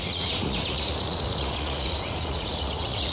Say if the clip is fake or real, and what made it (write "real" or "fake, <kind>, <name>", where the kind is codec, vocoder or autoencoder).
fake, vocoder, Vocos